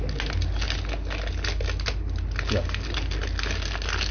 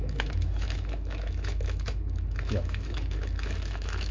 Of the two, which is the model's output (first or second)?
second